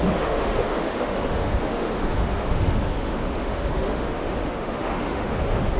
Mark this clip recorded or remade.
remade